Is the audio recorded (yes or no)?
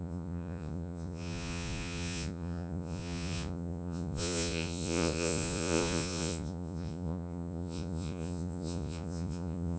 no